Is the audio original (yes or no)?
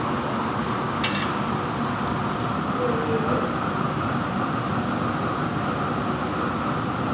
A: yes